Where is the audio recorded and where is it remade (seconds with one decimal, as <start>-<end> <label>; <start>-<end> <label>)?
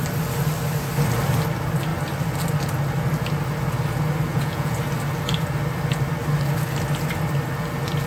0.0-4.3 recorded; 4.3-4.8 remade; 4.8-8.1 recorded